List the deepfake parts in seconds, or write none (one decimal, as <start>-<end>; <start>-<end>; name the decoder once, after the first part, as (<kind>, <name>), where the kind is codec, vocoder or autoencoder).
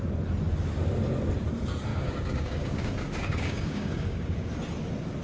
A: 1.9-4.5 (codec, DAC)